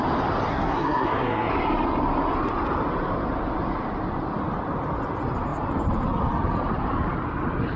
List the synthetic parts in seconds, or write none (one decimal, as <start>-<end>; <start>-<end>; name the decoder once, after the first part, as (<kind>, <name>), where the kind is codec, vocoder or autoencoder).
0.5-1.5 (codec, SNAC)